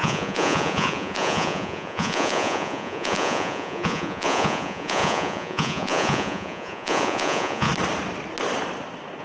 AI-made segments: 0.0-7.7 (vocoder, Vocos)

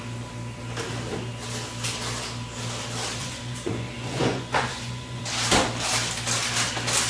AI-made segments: 3.2-5.2 (vocoder, Vocos)